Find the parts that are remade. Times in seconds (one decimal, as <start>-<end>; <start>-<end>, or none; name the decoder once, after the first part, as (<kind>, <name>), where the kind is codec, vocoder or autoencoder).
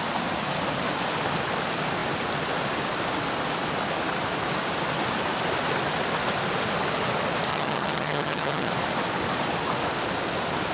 7.5-8.7 (vocoder, HiFi-GAN)